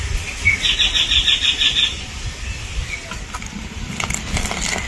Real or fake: real